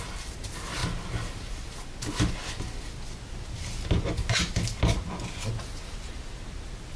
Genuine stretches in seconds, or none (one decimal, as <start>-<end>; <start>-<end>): 0.0-7.0